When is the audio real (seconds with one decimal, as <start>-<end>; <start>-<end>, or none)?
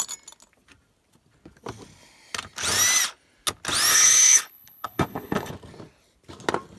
0.0-3.9; 5.5-6.8